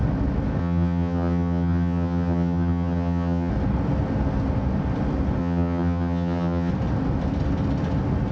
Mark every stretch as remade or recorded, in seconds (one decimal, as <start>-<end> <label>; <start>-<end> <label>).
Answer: 0.0-0.6 recorded; 0.6-3.5 remade; 3.5-5.4 recorded; 5.4-6.7 remade; 6.7-8.3 recorded